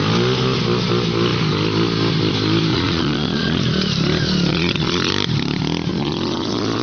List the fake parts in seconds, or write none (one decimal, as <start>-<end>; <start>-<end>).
2.7-3.6; 4.5-5.1; 5.9-6.8